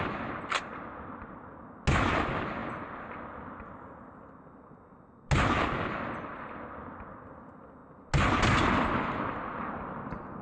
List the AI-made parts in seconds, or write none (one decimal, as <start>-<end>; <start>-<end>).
none